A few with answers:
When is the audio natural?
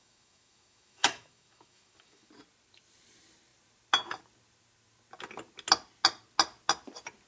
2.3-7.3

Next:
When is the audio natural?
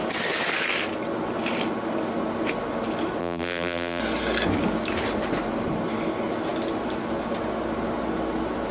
0.0-3.2; 4.0-8.7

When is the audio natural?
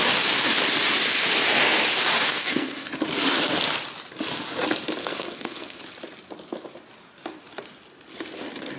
0.0-2.3; 2.9-5.0; 5.8-8.8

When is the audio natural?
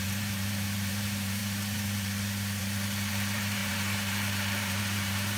none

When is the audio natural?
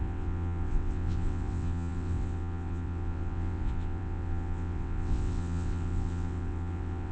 none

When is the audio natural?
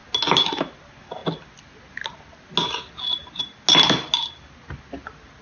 0.0-5.4